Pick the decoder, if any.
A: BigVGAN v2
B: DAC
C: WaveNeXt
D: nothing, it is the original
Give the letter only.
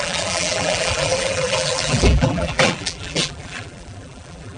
A